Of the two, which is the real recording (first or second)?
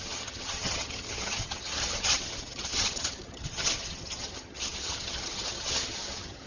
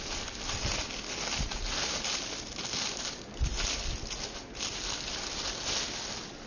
second